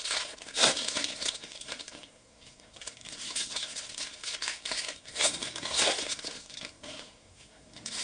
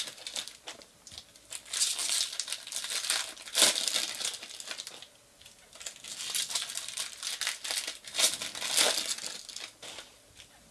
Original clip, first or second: second